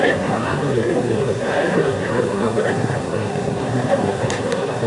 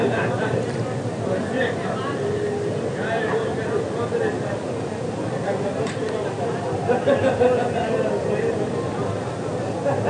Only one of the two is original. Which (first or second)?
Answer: second